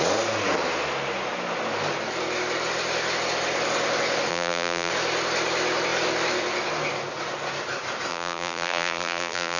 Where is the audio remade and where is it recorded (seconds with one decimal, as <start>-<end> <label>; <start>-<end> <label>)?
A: 0.0-4.3 recorded; 4.3-4.9 remade; 4.9-8.1 recorded; 8.1-9.6 remade